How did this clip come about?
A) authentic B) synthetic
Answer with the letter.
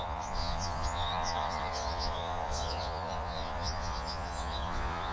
B